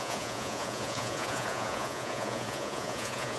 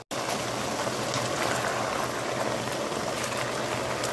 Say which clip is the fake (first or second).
first